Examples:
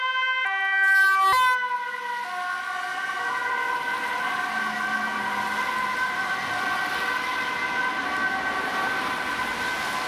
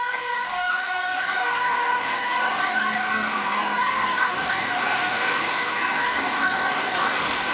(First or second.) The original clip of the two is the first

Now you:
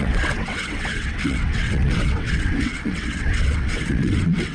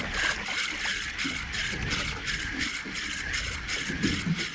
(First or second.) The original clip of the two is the second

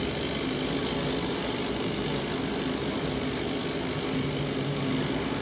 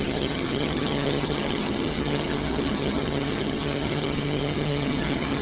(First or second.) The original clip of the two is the first